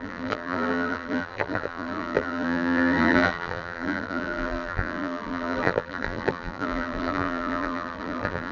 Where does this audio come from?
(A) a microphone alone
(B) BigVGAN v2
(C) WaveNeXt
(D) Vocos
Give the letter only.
B